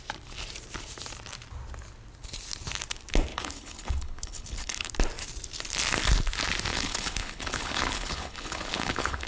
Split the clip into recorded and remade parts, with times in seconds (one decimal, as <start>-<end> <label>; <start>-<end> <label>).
0.0-3.3 recorded; 3.3-4.9 remade; 4.9-6.7 recorded; 6.7-9.3 remade